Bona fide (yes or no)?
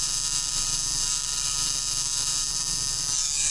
no